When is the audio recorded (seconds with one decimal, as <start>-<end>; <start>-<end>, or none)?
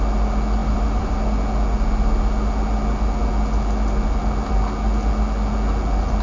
0.0-0.6; 1.2-6.2